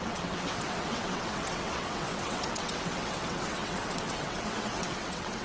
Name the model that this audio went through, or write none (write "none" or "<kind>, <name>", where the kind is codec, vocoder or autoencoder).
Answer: vocoder, WaveNeXt